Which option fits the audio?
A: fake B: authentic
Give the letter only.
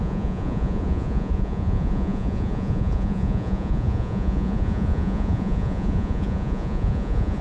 A